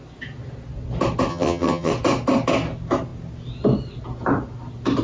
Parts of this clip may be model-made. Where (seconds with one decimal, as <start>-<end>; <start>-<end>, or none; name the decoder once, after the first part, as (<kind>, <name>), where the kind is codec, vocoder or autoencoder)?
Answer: 1.3-1.9 (vocoder, HiFi-GAN)